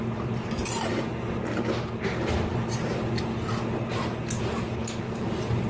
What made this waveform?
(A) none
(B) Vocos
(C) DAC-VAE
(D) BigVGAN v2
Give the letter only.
A